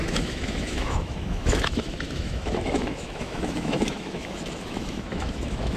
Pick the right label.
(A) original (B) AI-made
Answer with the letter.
B